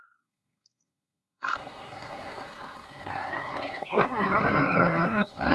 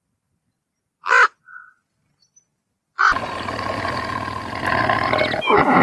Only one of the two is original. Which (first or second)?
second